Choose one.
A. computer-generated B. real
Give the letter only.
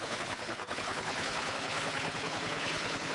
A